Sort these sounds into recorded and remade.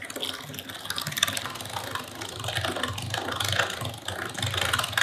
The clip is recorded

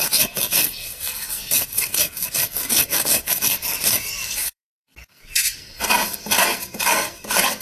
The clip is remade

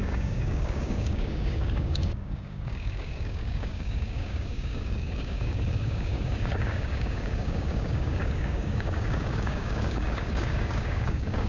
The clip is remade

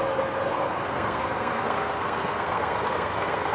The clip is remade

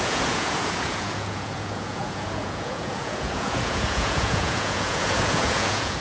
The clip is remade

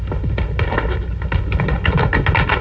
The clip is recorded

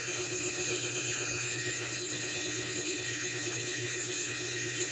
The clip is remade